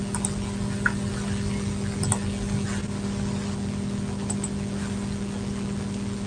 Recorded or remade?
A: recorded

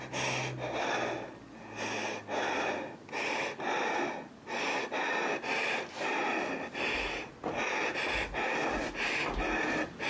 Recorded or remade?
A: recorded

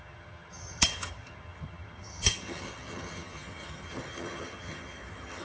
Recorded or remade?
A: remade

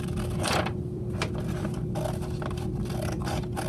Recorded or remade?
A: recorded